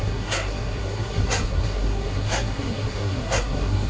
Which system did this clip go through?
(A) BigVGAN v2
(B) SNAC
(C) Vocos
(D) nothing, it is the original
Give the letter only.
B